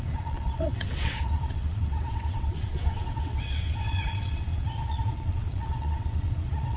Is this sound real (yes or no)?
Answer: no